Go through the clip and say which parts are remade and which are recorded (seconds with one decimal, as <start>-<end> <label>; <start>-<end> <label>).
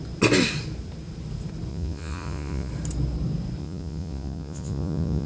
0.0-1.7 recorded; 1.7-2.7 remade; 2.7-3.6 recorded; 3.6-5.3 remade